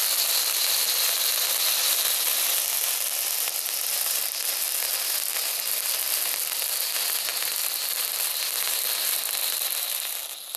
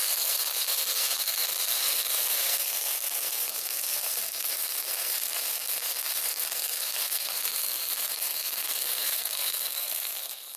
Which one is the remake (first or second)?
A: second